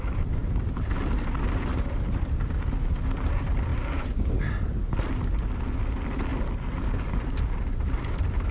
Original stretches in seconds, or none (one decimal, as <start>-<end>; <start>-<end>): 0.0-8.5